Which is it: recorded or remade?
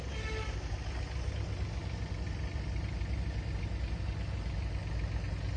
recorded